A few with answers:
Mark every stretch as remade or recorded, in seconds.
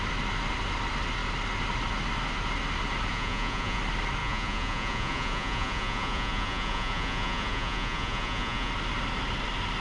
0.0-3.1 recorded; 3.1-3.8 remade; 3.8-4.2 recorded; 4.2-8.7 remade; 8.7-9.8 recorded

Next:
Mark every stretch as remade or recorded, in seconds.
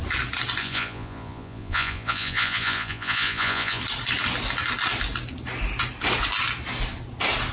0.0-0.6 recorded; 0.6-3.8 remade; 3.8-7.5 recorded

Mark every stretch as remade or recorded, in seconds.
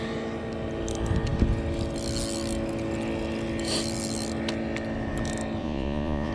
0.0-5.6 recorded; 5.6-6.3 remade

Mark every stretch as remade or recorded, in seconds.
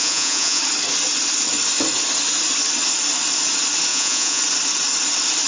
0.0-0.6 remade; 0.6-3.9 recorded; 3.9-4.4 remade; 4.4-5.5 recorded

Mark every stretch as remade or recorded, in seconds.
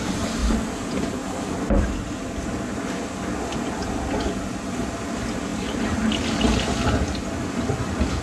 0.0-8.2 recorded